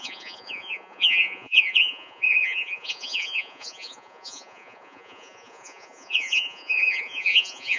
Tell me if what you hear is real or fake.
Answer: fake